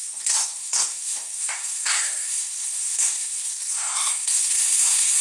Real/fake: fake